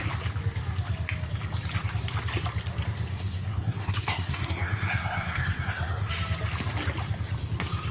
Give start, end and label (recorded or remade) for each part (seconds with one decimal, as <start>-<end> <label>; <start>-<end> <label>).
0.0-3.1 recorded; 3.1-6.1 remade; 6.1-7.9 recorded